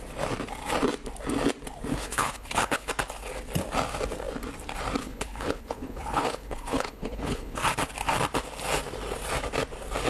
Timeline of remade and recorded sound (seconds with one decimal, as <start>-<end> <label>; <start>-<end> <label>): 0.0-1.9 recorded; 1.9-2.9 remade; 2.9-5.0 recorded; 5.0-7.6 remade; 7.6-10.1 recorded